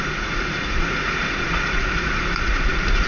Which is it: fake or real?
fake